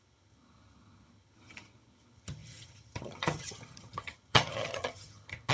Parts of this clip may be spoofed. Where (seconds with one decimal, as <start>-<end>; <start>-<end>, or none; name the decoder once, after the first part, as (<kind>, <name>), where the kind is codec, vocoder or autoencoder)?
0.0-5.5 (vocoder, HiFi-GAN)